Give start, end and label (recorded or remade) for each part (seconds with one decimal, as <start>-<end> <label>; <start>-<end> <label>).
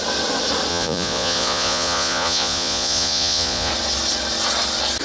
0.0-0.7 recorded; 0.7-3.7 remade; 3.7-5.0 recorded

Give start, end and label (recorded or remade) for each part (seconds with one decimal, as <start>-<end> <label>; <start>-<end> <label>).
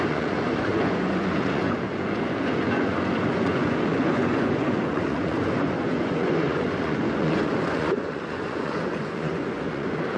0.0-10.2 remade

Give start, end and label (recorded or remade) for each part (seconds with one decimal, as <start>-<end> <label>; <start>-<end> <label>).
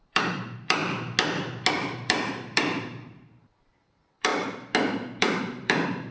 0.0-0.8 remade; 0.8-1.7 recorded; 1.7-4.3 remade; 4.3-5.2 recorded; 5.2-6.1 remade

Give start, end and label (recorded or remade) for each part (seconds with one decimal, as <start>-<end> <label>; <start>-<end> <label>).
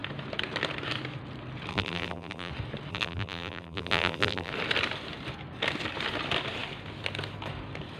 0.0-1.7 recorded; 1.7-2.5 remade; 2.5-2.9 recorded; 2.9-4.5 remade; 4.5-8.0 recorded